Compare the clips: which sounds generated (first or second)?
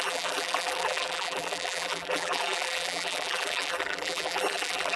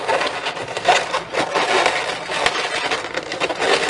first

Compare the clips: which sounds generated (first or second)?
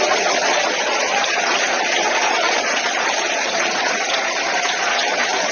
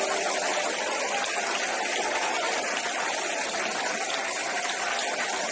first